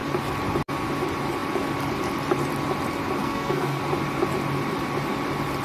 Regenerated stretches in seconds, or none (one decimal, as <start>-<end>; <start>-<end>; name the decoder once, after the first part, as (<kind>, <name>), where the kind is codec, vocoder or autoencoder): 3.2-3.8 (codec, SNAC)